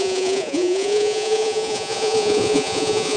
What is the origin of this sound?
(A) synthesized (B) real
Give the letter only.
A